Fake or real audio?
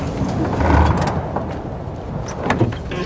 real